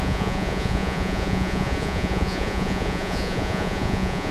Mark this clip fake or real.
fake